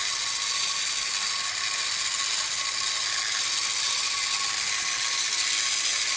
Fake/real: real